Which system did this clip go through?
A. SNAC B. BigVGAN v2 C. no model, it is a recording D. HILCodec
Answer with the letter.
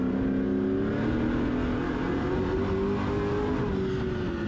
C